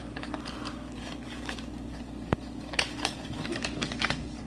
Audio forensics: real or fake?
fake